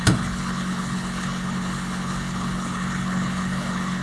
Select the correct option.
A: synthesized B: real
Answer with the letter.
A